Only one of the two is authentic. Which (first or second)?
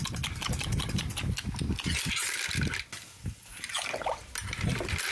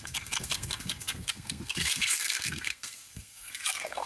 first